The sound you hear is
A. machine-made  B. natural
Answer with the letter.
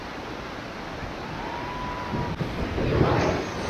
B